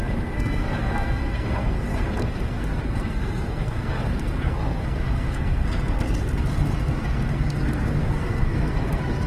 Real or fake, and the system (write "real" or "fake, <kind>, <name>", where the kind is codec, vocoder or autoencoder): fake, codec, SNAC